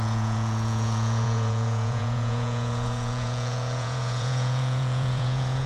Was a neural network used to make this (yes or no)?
yes